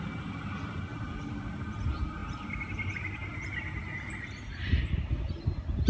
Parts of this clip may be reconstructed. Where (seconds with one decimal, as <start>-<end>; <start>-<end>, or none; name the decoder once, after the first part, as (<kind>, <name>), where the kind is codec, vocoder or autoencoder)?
0.9-1.6 (vocoder, BigVGAN v2)